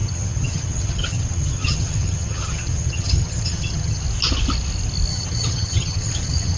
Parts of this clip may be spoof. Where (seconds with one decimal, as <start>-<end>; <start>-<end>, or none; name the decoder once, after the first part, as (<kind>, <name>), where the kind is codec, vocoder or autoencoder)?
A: 0.0-4.0 (vocoder, HiFi-GAN); 5.1-6.6